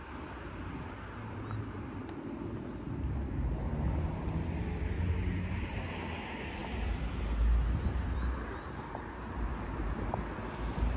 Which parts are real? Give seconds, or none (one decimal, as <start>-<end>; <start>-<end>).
0.0-11.0